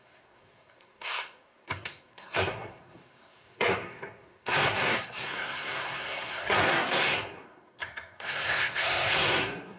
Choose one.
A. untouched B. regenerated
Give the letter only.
B